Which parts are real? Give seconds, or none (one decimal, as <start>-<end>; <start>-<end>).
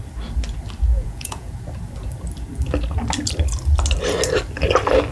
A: 0.0-0.9; 1.5-5.1